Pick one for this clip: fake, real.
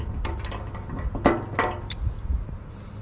real